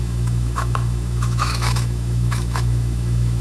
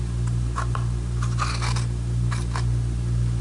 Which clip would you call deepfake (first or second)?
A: first